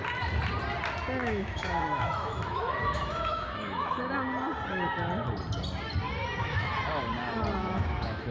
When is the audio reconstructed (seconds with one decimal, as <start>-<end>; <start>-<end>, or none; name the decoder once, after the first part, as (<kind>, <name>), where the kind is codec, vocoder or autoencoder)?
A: 1.2-4.0 (autoencoder, DAC-VAE); 6.2-6.7; 7.6-8.3